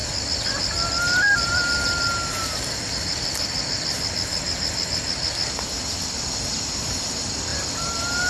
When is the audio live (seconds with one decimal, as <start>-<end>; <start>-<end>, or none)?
0.0-8.3